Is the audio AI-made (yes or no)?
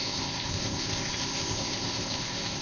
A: yes